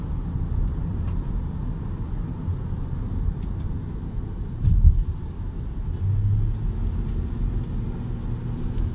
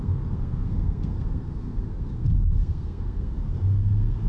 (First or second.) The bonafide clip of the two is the first